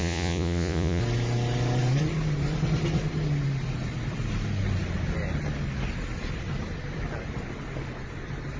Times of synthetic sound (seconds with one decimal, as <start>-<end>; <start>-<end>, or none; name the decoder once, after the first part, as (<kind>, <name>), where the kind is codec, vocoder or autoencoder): 0.0-1.0 (vocoder, Vocos)